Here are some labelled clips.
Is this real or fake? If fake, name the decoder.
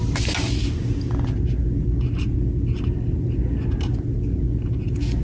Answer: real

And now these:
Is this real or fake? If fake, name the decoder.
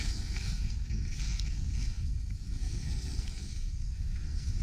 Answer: fake, codec, SNAC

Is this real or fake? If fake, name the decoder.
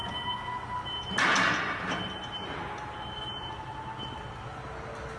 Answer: real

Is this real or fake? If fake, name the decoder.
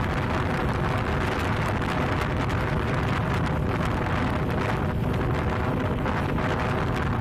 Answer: real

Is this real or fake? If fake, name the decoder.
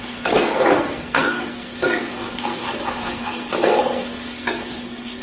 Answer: fake, codec, SNAC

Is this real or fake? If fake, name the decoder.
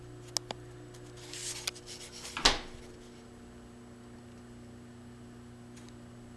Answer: real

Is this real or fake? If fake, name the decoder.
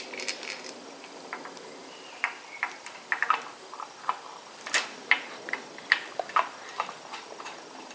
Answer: real